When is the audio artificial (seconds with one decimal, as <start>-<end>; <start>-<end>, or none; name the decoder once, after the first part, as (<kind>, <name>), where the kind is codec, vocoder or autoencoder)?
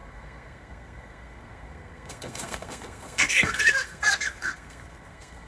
0.0-5.5 (codec, SNAC)